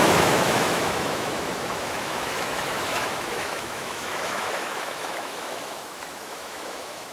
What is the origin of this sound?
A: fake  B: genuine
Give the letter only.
A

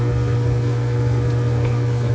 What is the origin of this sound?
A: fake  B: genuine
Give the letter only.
A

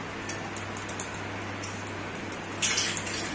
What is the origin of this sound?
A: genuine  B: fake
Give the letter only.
A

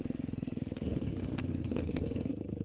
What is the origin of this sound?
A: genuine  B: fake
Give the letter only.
B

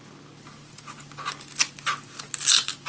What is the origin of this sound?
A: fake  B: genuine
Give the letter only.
B